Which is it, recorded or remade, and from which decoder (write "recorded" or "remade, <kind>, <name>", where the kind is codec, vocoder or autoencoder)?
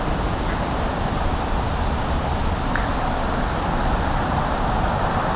recorded